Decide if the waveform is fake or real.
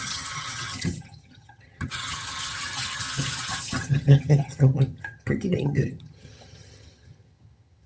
fake